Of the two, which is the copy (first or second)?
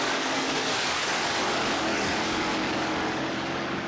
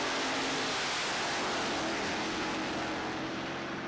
first